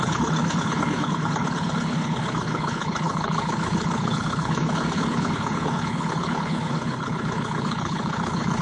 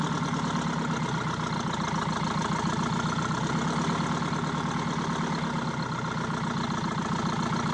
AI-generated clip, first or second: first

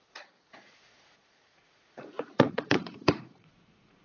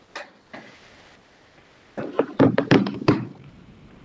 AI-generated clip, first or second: first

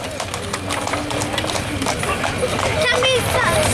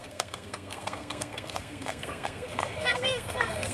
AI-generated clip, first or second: second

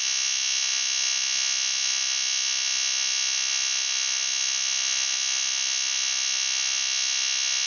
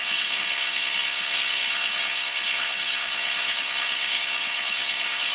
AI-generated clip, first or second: second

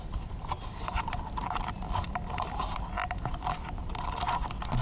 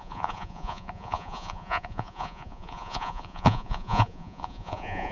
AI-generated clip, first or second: second